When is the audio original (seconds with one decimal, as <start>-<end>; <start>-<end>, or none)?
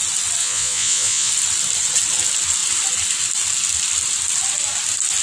0.0-0.4; 1.3-5.2